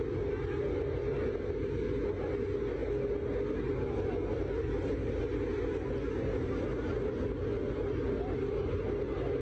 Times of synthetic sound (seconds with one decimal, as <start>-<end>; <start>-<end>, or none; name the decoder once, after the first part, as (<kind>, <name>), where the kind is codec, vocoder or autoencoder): none